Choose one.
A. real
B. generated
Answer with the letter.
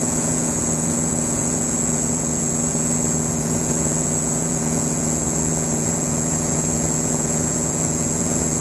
B